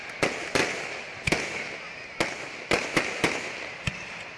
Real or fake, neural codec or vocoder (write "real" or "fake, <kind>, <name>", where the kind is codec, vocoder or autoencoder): real